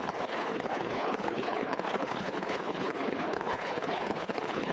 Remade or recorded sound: remade